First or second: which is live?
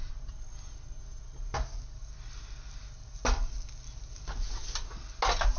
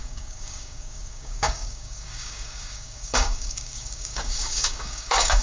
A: first